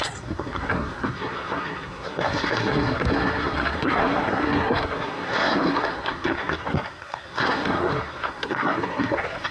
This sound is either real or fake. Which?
fake